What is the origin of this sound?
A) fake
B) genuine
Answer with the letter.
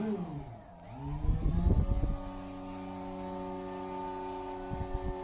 B